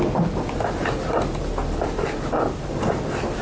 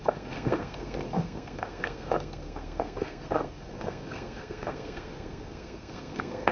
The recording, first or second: first